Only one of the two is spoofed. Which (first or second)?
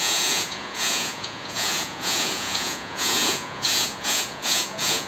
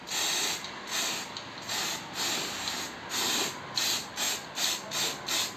first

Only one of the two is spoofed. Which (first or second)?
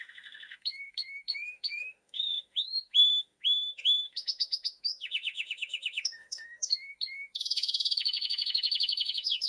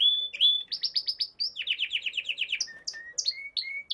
first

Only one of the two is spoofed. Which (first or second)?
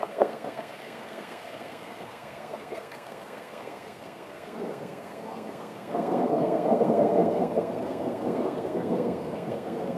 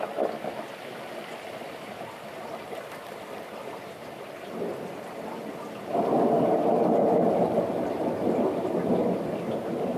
first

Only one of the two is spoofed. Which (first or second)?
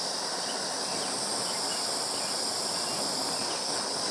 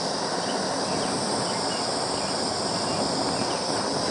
first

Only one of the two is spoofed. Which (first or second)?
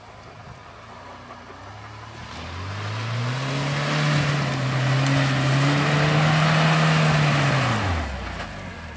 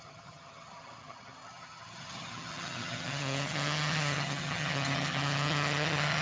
second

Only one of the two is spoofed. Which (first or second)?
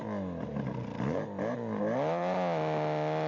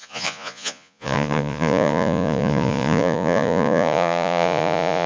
second